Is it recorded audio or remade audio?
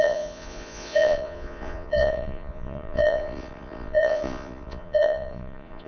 remade